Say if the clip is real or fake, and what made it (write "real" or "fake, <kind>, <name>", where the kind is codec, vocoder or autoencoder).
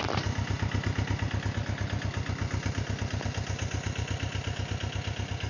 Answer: real